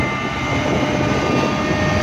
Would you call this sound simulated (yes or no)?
no